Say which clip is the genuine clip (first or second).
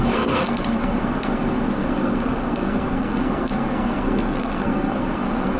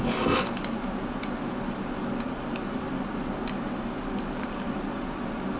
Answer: second